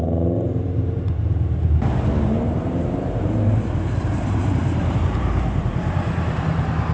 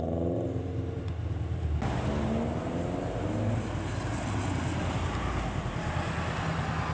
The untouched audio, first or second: second